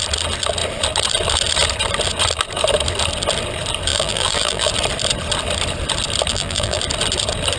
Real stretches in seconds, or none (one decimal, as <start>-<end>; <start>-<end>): 0.0-3.9; 4.7-6.3; 6.8-7.6